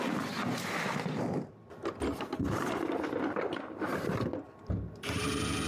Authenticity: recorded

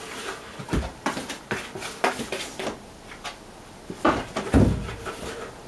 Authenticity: recorded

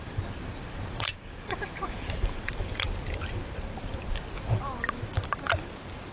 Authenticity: remade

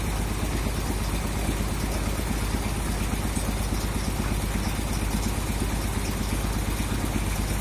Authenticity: recorded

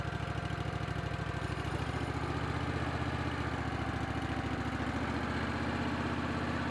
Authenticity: recorded